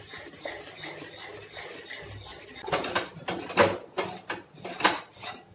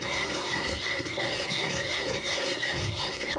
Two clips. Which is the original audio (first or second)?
first